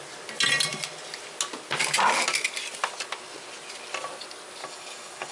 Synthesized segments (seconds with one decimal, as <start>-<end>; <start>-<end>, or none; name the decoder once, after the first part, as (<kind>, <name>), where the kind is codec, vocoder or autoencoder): 4.6-5.3 (codec, DAC)